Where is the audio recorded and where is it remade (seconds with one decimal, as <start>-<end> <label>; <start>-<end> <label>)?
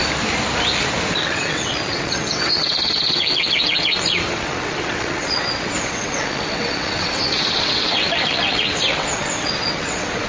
0.0-1.2 recorded; 1.2-10.3 remade